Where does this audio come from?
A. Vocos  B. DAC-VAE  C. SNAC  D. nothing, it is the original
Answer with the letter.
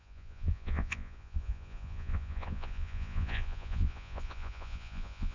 A